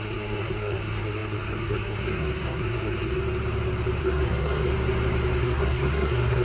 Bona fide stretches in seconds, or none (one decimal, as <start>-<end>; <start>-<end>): 3.2-4.0; 4.7-5.4